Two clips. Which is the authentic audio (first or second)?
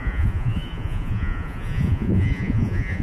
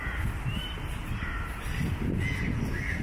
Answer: second